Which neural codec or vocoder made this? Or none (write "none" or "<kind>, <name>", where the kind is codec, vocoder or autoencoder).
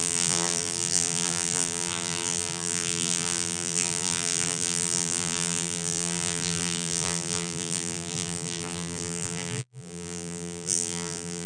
vocoder, BigVGAN v2